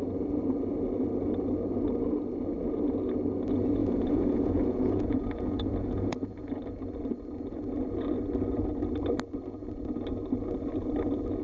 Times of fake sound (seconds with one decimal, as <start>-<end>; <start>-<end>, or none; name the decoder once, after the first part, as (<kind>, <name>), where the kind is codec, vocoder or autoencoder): 3.8-6.5 (vocoder, Vocos)